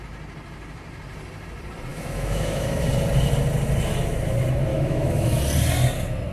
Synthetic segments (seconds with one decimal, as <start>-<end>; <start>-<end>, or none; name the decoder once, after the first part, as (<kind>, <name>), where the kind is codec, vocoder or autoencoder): 1.9-2.8 (autoencoder, DAC-VAE); 4.7-5.4